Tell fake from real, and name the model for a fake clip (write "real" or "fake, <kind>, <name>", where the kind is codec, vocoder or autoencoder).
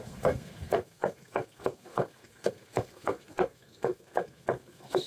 fake, codec, SNAC